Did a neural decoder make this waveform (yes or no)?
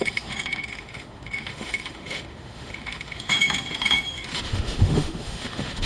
yes